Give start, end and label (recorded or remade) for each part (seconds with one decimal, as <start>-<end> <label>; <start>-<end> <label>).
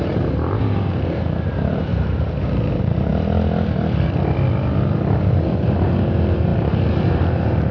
0.0-1.9 remade; 1.9-2.7 recorded; 2.7-3.1 remade; 3.1-5.6 recorded; 5.6-7.7 remade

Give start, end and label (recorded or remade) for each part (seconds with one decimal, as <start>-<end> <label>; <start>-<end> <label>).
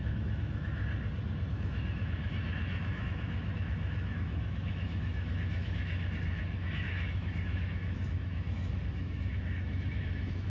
0.0-0.8 remade; 0.8-1.5 recorded; 1.5-10.5 remade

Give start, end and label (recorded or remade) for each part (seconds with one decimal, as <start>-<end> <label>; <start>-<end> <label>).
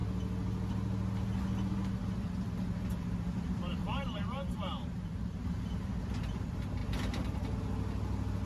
0.0-3.8 recorded; 3.8-5.6 remade; 5.6-8.5 recorded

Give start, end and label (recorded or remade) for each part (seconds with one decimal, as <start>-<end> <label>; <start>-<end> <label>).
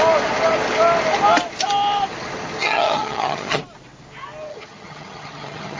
0.0-2.6 recorded; 2.6-3.6 remade; 3.6-4.5 recorded; 4.5-5.8 remade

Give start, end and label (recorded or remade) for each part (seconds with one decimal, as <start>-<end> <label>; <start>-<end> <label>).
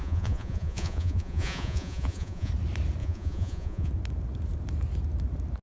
0.0-2.5 remade; 2.5-3.0 recorded; 3.0-3.9 remade; 3.9-5.6 recorded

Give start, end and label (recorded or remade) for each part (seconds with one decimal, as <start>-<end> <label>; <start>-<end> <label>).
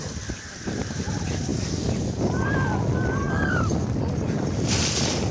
0.0-5.3 recorded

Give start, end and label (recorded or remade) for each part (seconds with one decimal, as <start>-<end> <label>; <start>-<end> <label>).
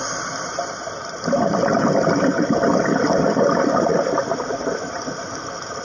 0.0-5.8 recorded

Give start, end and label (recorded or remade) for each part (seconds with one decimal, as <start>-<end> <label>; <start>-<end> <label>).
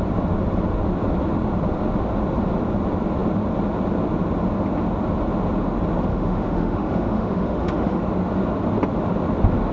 0.0-6.1 recorded; 6.1-8.0 remade; 8.0-9.7 recorded